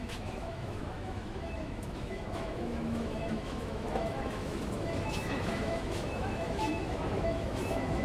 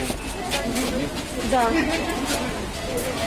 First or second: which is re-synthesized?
first